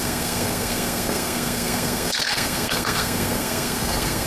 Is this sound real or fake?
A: fake